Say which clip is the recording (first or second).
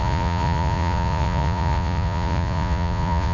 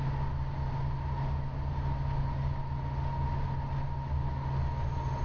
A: second